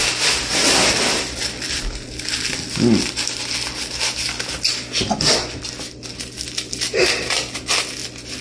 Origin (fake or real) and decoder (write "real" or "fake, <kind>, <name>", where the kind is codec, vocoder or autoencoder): real